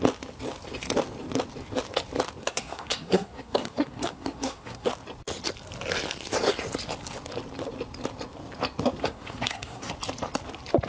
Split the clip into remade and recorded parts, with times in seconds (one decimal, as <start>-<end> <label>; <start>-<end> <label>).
0.0-2.4 recorded; 2.4-4.9 remade; 4.9-9.0 recorded; 9.0-9.9 remade; 9.9-10.9 recorded